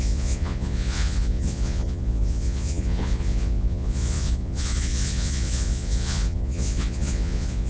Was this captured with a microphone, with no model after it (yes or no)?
no